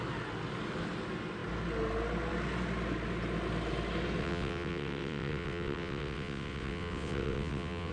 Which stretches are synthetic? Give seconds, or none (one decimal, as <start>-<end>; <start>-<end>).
4.2-7.9